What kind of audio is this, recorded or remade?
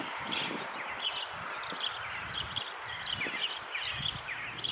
recorded